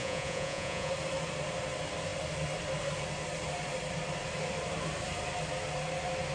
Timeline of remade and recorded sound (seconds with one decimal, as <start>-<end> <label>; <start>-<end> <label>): 0.0-0.9 remade; 0.9-6.3 recorded